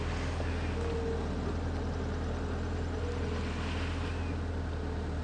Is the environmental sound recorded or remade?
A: recorded